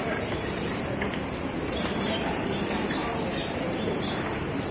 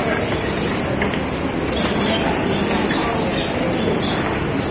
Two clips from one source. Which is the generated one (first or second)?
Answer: first